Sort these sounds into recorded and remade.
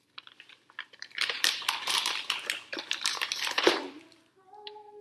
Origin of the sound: remade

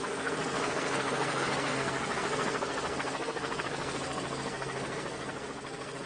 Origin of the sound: remade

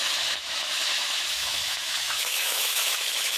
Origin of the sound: remade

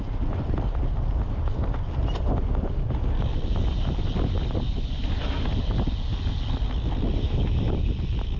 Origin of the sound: recorded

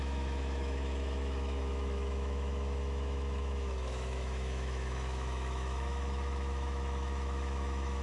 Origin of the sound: remade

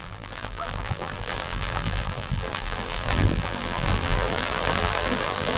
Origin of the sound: remade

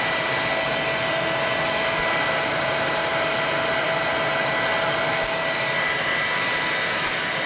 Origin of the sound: recorded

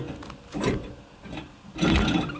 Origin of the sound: recorded